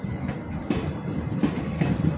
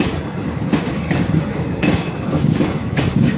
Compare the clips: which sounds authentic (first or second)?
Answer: first